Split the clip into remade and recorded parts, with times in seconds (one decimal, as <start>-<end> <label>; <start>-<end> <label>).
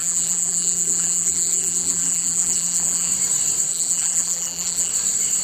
0.0-3.1 remade; 3.1-3.7 recorded; 3.7-4.9 remade; 4.9-5.4 recorded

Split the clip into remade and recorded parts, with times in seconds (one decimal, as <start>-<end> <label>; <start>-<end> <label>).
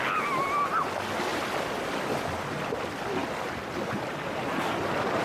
0.0-1.3 recorded; 1.3-1.8 remade; 1.8-5.2 recorded